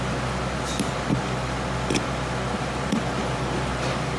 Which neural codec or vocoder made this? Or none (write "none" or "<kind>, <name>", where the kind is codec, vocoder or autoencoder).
none